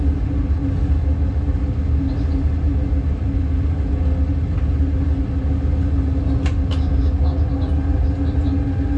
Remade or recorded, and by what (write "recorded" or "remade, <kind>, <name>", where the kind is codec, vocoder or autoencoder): recorded